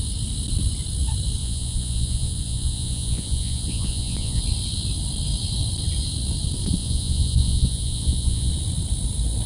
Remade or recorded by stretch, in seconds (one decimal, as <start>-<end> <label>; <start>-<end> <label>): 0.0-1.4 recorded; 1.4-4.4 remade; 4.4-6.8 recorded; 6.8-8.5 remade; 8.5-9.5 recorded